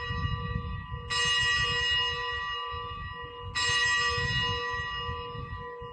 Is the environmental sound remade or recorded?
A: recorded